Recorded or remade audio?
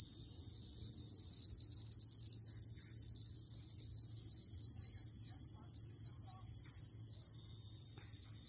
recorded